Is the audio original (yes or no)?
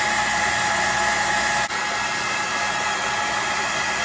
yes